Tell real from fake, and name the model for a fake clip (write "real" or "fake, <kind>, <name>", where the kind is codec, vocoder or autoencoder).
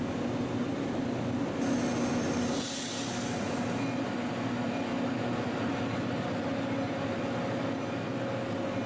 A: real